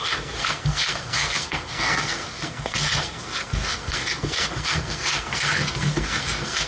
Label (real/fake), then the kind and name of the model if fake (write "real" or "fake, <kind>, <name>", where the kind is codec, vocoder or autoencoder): fake, codec, SNAC